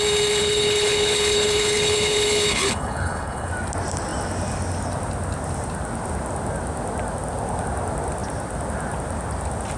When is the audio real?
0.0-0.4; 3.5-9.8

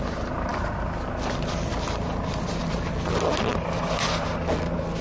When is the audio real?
0.0-5.0